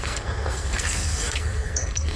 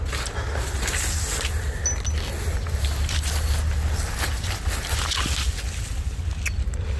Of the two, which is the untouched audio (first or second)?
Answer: second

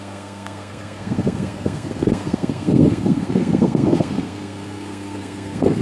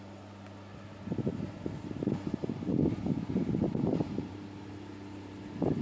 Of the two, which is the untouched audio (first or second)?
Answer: second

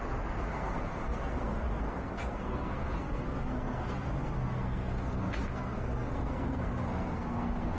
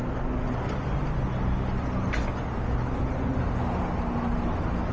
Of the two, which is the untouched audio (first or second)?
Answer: second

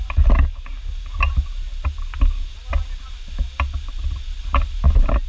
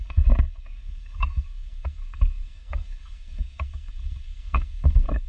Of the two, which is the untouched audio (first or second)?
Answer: first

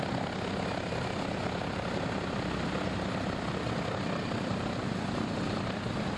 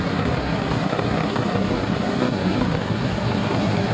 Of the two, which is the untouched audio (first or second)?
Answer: first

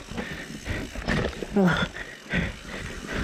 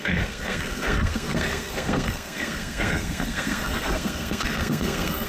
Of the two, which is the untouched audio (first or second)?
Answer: first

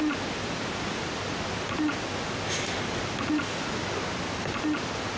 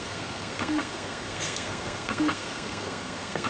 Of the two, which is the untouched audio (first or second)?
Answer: first